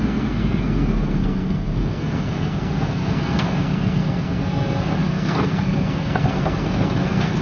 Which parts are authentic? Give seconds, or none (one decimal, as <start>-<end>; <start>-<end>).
none